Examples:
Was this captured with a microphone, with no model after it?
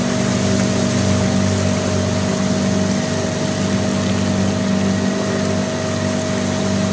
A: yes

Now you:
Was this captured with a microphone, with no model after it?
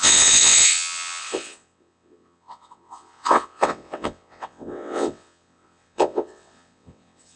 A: no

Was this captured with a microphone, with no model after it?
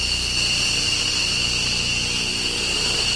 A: yes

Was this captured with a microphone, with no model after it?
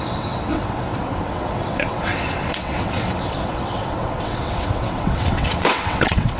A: no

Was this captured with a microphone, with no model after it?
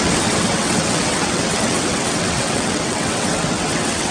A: no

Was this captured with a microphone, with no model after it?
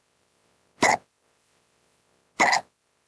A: yes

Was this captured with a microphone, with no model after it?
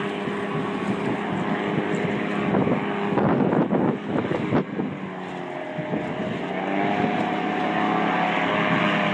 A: yes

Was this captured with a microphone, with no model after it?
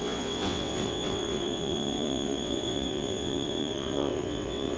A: no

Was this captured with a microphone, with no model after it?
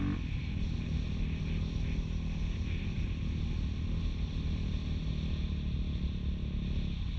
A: yes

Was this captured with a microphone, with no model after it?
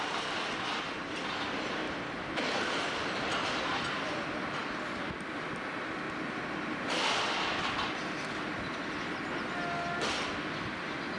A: yes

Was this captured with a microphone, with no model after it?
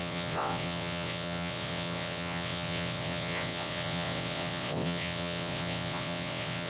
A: no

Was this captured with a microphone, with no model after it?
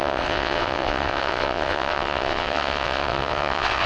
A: no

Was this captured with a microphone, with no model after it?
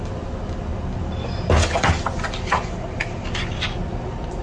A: yes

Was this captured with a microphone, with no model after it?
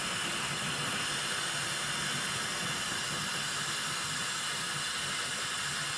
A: yes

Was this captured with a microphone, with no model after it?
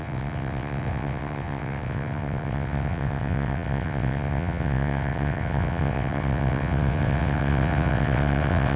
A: no